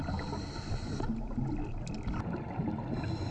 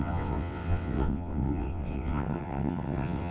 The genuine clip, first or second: first